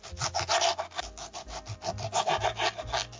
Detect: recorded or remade recorded